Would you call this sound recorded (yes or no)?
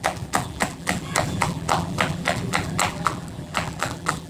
no